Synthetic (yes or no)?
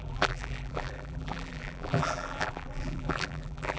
yes